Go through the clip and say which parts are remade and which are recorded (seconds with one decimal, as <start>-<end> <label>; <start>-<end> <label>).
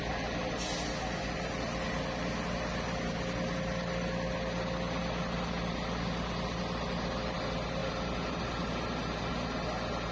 0.0-10.1 recorded